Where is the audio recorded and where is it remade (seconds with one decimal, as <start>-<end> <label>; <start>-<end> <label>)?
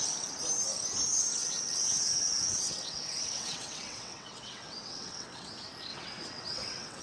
0.0-1.4 recorded; 1.4-5.5 remade; 5.5-5.9 recorded; 5.9-7.0 remade